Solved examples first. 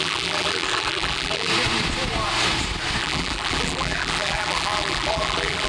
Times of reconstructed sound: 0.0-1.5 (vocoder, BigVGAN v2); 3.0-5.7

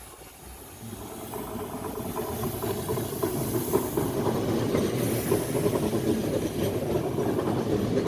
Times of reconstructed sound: 2.9-4.1 (vocoder, BigVGAN v2); 6.2-8.1

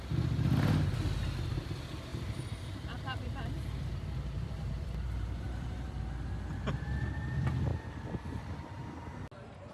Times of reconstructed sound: 2.1-6.0 (vocoder, BigVGAN v2); 7.7-8.4

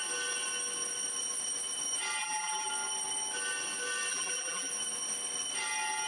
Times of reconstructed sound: 2.2-2.7 (vocoder, BigVGAN v2); 4.1-4.7

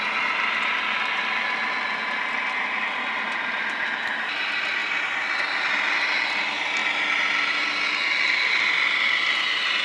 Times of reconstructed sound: none

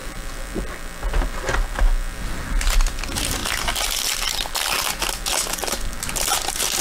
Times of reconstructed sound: 3.4-4.7 (vocoder, BigVGAN v2)

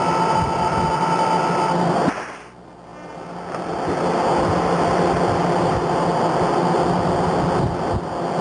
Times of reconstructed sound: none